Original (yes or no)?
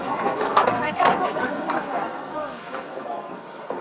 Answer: no